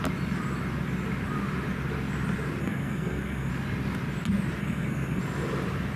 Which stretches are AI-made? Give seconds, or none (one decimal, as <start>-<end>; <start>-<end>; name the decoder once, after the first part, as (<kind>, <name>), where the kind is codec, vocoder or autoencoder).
2.6-3.5 (codec, SNAC); 4.6-5.2